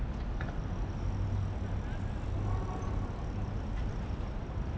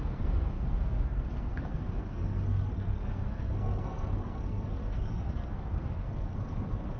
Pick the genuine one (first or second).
first